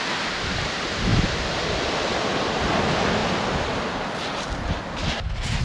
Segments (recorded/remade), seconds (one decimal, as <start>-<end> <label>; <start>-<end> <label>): 0.0-5.6 recorded